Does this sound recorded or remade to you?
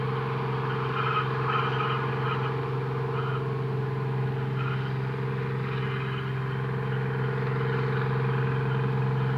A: recorded